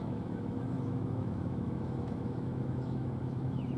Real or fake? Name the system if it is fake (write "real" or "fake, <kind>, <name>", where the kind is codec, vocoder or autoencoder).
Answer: fake, autoencoder, DAC-VAE